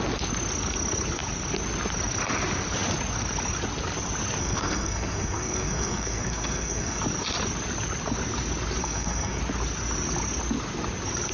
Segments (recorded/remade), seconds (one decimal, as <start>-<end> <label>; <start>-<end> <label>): 0.0-4.4 recorded; 4.4-7.0 remade; 7.0-8.8 recorded; 8.8-9.4 remade; 9.4-11.3 recorded